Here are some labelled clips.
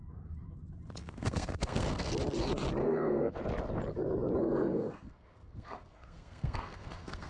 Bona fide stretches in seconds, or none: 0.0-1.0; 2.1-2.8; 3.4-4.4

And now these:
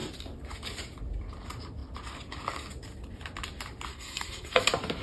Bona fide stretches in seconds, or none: 0.0-3.9; 4.6-5.0

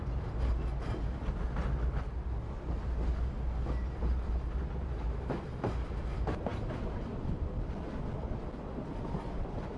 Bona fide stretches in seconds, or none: 0.0-9.8

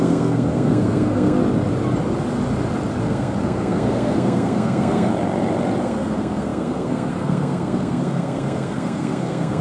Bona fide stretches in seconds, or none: 1.4-3.0; 5.1-5.8

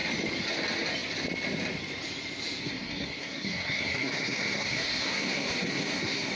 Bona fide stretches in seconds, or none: 0.0-2.6

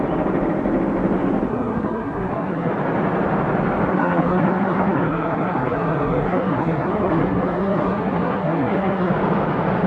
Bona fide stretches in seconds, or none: 0.0-1.5; 2.7-3.9; 9.1-9.9

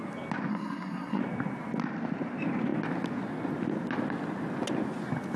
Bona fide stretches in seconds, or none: 0.0-0.5; 1.2-5.4